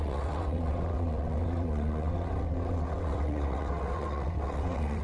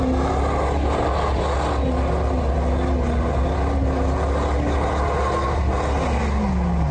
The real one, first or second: second